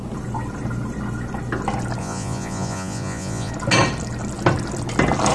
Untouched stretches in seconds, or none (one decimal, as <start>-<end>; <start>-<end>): 0.0-2.0; 3.5-5.3